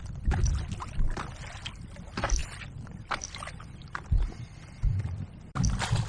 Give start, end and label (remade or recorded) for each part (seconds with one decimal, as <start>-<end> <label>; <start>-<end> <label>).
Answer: 0.0-6.1 recorded